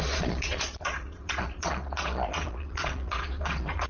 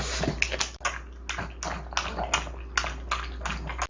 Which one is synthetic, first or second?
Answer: first